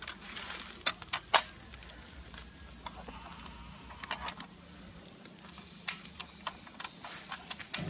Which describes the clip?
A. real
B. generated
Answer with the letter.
A